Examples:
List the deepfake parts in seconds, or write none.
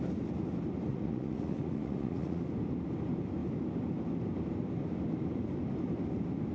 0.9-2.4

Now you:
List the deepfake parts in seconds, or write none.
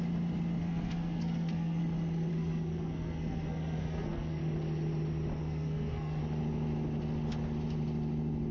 0.6-1.8; 2.3-4.4; 5.4-6.2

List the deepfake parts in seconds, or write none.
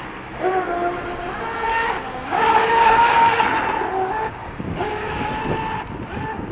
1.7-3.4; 4.4-5.2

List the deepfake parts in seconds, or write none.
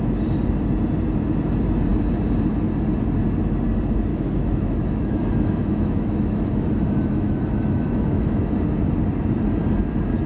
4.1-8.5